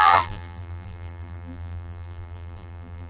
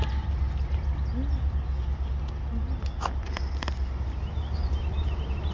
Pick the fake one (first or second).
first